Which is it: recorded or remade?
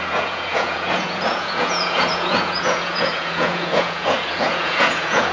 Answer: remade